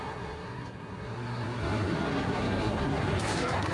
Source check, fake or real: fake